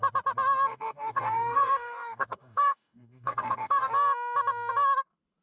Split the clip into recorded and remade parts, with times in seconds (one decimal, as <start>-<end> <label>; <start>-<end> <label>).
0.0-0.7 recorded; 0.7-3.9 remade; 3.9-5.4 recorded